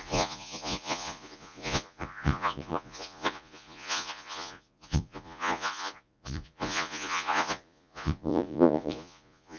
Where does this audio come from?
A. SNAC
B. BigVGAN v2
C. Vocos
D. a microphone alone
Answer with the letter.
C